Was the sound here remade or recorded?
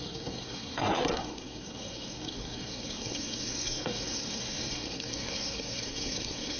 remade